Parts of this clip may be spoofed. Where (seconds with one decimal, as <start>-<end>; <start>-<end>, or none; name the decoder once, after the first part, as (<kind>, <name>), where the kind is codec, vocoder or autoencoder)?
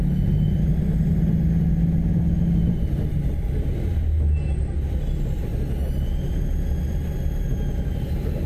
none